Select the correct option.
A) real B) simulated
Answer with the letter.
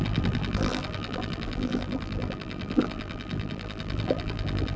B